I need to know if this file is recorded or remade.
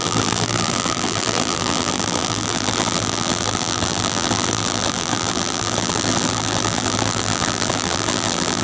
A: remade